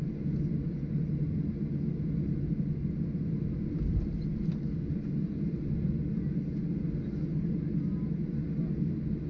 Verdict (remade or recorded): recorded